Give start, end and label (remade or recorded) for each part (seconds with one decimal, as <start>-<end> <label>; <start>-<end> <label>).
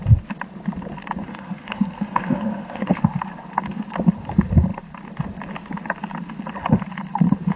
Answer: 0.0-1.3 recorded; 1.3-3.0 remade; 3.0-7.6 recorded